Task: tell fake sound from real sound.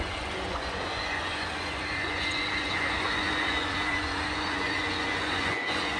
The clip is fake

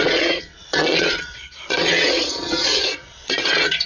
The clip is fake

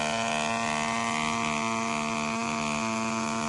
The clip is real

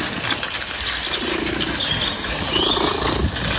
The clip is real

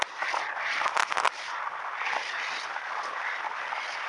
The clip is real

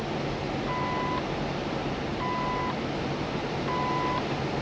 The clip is real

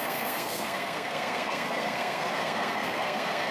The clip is fake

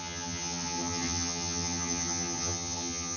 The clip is fake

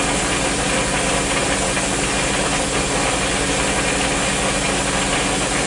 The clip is real